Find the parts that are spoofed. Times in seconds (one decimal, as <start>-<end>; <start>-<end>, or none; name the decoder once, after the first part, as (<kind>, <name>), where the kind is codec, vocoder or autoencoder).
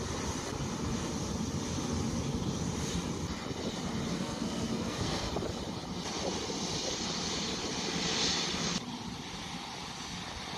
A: 4.1-5.3 (codec, SNAC)